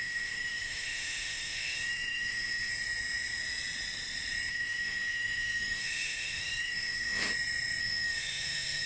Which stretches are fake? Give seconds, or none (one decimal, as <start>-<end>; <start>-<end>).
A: 0.0-2.7; 4.5-7.3; 7.8-8.9